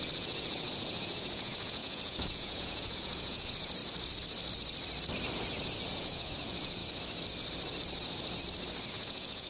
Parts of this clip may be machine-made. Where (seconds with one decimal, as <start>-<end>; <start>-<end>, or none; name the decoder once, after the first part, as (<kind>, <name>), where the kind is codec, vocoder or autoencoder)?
0.0-3.8 (vocoder, Vocos); 5.9-6.8; 8.9-9.5